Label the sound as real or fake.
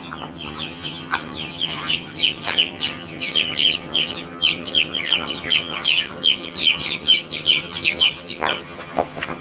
fake